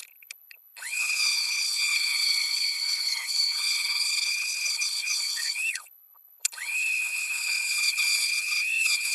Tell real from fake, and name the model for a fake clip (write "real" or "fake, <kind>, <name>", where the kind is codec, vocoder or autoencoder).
fake, codec, HILCodec